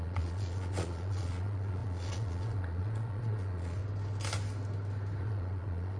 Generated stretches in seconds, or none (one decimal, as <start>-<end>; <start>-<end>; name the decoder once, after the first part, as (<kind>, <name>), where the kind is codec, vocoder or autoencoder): 0.0-3.8 (vocoder, Vocos); 5.2-6.0

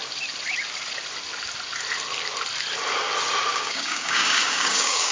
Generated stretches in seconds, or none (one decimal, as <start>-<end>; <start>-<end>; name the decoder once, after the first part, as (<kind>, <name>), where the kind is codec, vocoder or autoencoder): 3.5-5.1 (codec, DAC)

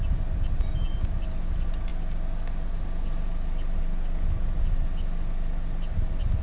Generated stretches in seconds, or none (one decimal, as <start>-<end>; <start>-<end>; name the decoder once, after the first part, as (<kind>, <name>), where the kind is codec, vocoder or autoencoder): none

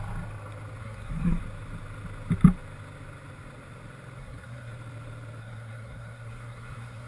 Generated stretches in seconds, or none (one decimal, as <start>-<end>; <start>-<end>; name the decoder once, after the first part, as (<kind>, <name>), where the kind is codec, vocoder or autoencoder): 0.8-1.4 (codec, SNAC); 4.2-4.7; 5.4-7.1

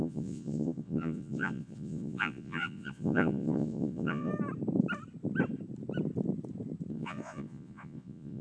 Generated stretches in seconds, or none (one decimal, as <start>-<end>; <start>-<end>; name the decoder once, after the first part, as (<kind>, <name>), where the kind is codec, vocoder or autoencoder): 0.0-4.3 (vocoder, Vocos); 6.9-8.4

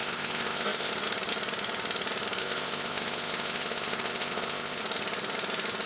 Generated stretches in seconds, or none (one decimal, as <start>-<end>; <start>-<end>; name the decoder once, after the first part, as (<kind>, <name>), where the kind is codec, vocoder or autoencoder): 0.0-0.9 (codec, ZipCodec); 2.4-4.8

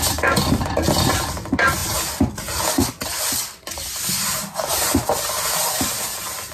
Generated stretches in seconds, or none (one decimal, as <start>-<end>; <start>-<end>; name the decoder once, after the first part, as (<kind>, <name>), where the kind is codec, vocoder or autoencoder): none

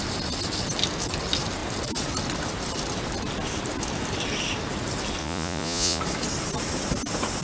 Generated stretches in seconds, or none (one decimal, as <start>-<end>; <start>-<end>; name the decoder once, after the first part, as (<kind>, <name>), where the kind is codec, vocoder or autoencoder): 5.2-6.0 (vocoder, Vocos)